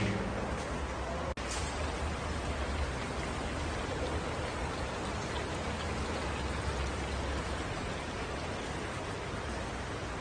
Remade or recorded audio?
recorded